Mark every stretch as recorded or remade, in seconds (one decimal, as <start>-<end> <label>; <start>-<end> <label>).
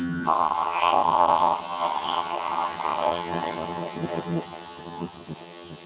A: 0.0-5.9 remade